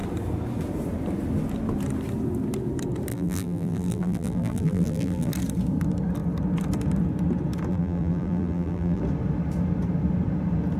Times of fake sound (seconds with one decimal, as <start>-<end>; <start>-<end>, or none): 3.1-5.3; 7.7-9.0